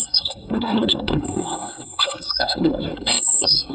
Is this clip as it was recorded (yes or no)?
no